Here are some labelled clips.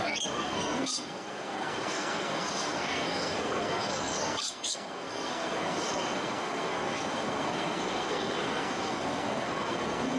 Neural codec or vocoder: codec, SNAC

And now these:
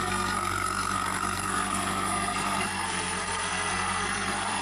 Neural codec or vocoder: codec, SNAC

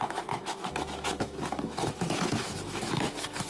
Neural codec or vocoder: autoencoder, DAC-VAE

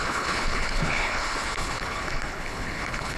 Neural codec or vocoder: codec, HILCodec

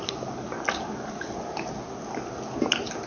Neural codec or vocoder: none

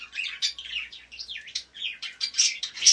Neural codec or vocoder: vocoder, Vocos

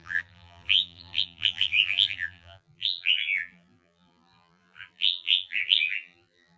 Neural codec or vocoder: vocoder, BigVGAN v2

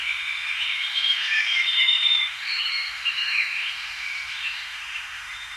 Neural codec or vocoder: autoencoder, DAC-VAE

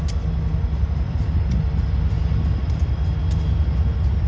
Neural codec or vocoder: none